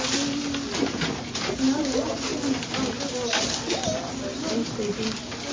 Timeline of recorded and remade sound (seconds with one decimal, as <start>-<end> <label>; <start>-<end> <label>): 0.0-5.5 recorded